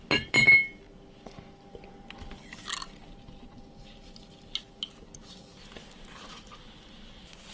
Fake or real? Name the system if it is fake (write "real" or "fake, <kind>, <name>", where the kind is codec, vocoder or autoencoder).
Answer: real